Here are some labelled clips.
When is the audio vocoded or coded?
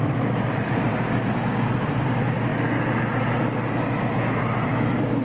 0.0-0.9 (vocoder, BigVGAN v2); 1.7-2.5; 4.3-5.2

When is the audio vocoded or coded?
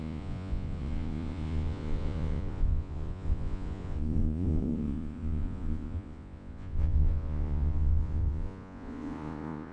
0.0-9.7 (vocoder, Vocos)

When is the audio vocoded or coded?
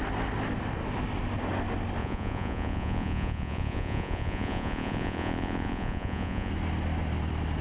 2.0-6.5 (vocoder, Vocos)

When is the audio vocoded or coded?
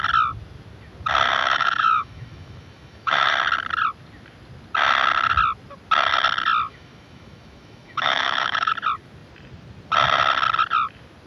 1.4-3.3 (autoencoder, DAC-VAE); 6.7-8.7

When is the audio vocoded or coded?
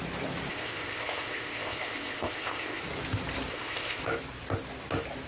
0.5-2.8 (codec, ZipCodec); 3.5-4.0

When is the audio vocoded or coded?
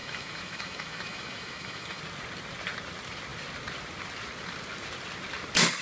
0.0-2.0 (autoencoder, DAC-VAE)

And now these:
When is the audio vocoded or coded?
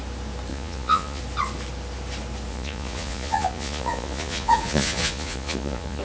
0.5-1.2 (vocoder, Vocos); 2.5-6.0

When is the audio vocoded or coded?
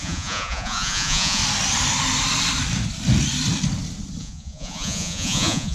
0.0-1.4 (vocoder, Vocos); 4.2-5.7